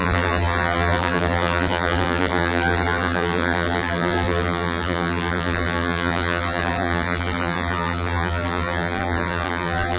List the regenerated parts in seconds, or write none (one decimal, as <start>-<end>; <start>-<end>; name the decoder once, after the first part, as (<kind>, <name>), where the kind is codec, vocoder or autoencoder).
0.0-10.0 (vocoder, BigVGAN v2)